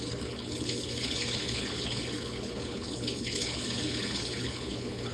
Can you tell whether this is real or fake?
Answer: fake